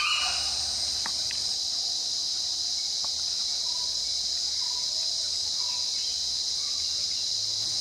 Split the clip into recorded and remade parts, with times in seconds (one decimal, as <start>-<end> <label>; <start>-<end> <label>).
0.0-1.1 recorded; 1.1-2.7 remade; 2.7-7.8 recorded